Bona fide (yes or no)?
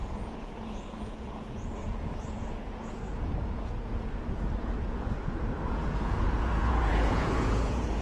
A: no